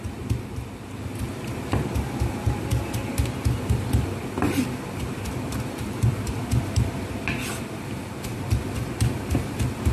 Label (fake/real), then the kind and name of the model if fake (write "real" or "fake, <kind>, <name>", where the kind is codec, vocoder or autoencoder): real